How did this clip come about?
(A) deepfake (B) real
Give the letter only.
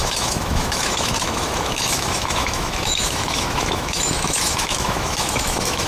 A